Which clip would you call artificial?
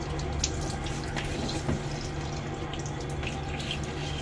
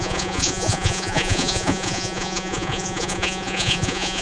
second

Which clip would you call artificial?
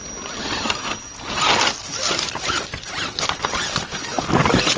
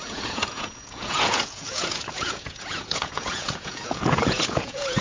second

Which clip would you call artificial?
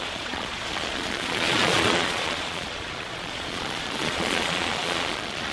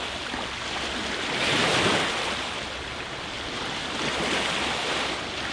first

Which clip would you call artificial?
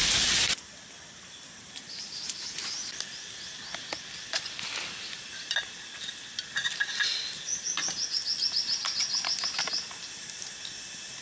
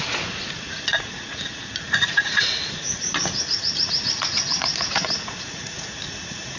second